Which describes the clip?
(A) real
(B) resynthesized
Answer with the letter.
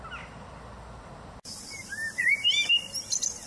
A